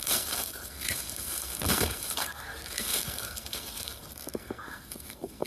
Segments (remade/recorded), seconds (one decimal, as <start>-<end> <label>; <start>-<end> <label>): 0.0-5.5 remade